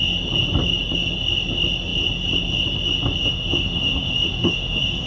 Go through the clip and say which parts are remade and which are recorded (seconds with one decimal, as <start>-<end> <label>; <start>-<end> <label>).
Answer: 0.0-3.2 recorded; 3.2-5.1 remade